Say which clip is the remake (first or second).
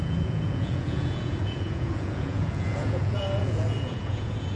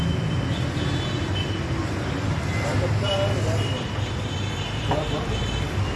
first